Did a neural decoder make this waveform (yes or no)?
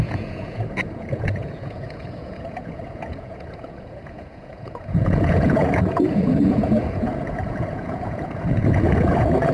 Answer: yes